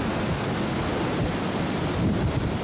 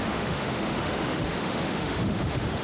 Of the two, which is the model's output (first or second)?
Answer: second